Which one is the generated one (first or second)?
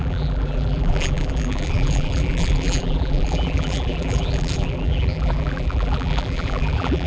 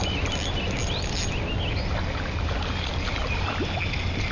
first